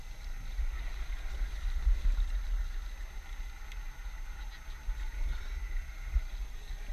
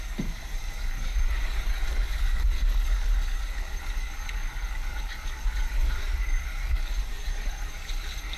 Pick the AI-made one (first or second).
second